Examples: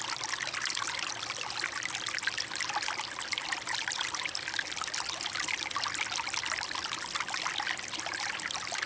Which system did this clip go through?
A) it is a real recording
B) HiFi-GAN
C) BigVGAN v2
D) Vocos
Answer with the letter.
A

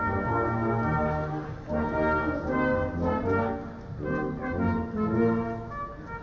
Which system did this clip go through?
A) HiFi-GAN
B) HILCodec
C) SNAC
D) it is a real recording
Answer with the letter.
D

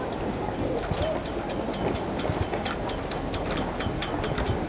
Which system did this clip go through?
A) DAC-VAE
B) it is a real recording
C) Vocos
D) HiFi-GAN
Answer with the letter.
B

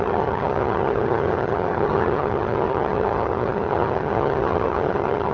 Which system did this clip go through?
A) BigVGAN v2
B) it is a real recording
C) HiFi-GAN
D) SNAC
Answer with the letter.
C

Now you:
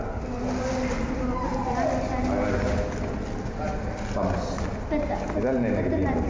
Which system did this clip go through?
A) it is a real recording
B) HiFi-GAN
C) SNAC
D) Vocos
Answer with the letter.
A